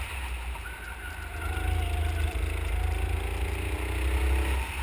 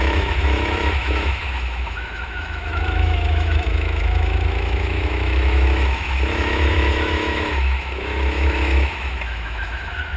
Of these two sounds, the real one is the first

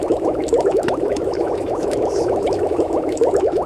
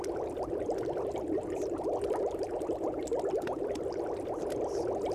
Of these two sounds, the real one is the second